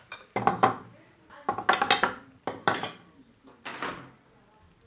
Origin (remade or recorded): recorded